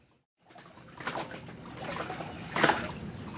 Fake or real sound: real